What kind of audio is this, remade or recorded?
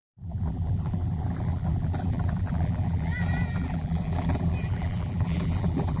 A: remade